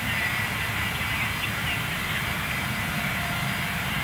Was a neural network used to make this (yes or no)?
yes